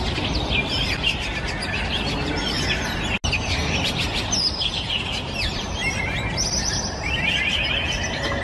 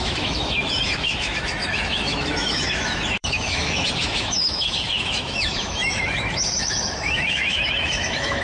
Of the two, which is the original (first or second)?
first